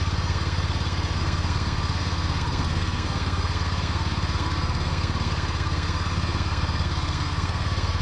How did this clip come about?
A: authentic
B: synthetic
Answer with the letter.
B